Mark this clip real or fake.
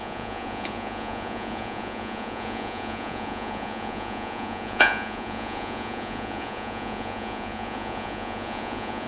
fake